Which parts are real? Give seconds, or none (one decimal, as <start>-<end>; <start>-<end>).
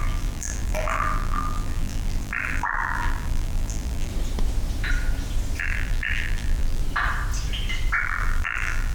4.1-5.6; 6.8-8.0